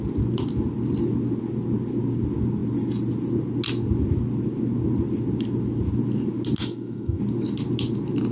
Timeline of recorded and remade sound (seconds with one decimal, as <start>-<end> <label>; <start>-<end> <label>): 0.0-6.6 recorded; 6.6-7.2 remade; 7.2-8.3 recorded

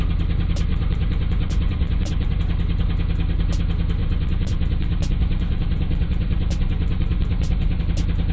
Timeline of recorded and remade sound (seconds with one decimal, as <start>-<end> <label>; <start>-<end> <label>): 0.0-0.7 recorded; 0.7-2.4 remade; 2.4-4.0 recorded; 4.0-7.8 remade; 7.8-8.3 recorded